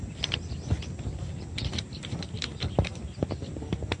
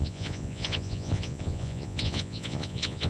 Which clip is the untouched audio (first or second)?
first